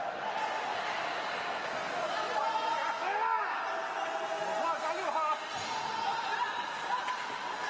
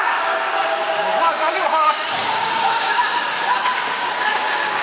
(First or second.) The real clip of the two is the first